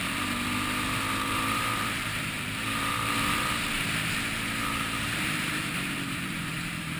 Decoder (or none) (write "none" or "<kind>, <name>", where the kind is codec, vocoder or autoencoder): vocoder, BigVGAN v2